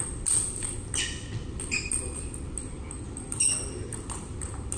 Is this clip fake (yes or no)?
no